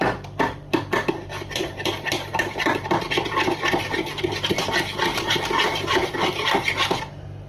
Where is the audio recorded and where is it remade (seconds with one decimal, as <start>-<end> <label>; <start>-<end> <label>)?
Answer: 0.0-2.3 recorded; 2.3-4.1 remade; 4.1-5.1 recorded; 5.1-5.9 remade; 5.9-7.5 recorded